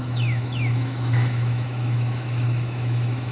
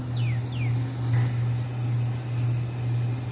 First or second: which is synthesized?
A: first